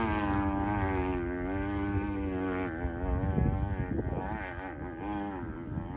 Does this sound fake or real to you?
real